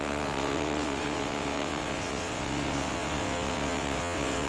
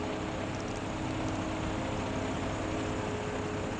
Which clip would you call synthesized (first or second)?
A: first